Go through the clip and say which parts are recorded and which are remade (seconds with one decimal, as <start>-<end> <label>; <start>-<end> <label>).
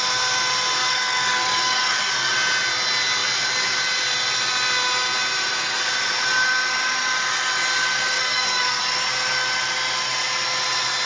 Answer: 0.0-0.8 recorded; 0.8-2.3 remade; 2.3-8.2 recorded; 8.2-8.8 remade; 8.8-11.1 recorded